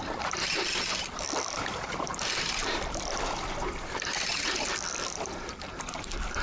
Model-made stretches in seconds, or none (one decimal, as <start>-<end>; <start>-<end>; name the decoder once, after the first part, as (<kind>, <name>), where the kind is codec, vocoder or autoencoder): none